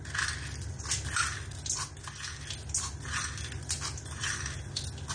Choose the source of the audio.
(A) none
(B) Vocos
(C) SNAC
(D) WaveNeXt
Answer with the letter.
A